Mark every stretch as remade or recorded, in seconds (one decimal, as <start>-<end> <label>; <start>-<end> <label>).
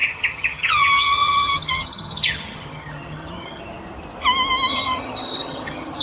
0.0-3.6 remade; 3.6-4.7 recorded; 4.7-6.0 remade